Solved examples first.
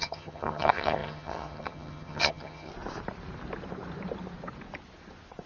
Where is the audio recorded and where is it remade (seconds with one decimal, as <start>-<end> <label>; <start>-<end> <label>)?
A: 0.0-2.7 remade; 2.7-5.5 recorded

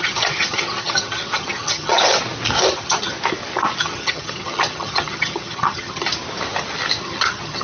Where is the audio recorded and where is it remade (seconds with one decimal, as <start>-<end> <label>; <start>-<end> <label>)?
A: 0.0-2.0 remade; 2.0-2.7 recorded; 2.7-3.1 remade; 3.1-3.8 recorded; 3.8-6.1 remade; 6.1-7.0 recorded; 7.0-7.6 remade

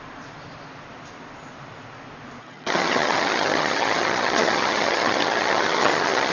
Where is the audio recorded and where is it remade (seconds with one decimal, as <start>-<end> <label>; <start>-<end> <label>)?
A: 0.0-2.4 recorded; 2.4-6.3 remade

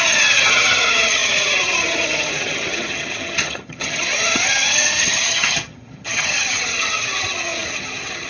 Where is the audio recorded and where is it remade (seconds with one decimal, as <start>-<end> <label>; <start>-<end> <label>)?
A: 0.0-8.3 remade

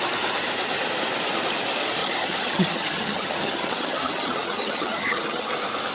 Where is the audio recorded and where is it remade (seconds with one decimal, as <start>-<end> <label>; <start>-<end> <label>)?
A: 0.0-2.0 recorded; 2.0-5.5 remade; 5.5-5.9 recorded

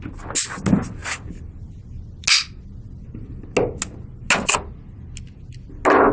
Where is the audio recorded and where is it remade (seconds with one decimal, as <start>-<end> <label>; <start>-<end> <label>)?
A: 0.0-6.1 recorded

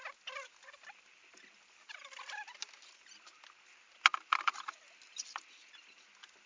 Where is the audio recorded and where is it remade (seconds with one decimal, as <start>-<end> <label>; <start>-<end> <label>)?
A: 0.0-6.5 recorded